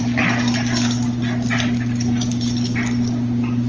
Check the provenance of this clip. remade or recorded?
recorded